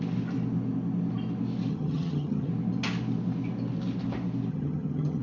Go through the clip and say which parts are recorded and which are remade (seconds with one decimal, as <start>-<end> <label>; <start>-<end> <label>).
0.0-1.7 recorded; 1.7-2.5 remade; 2.5-4.5 recorded; 4.5-5.2 remade